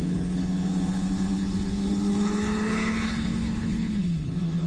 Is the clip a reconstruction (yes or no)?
yes